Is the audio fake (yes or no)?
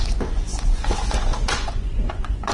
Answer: yes